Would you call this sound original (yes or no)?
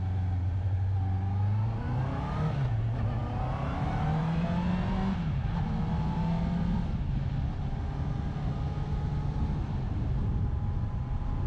yes